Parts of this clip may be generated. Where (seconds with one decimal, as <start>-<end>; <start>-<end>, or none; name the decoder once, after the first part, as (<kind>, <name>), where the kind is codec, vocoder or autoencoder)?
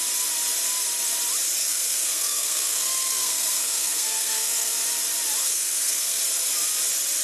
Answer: 1.6-4.8 (codec, SNAC); 5.4-6.2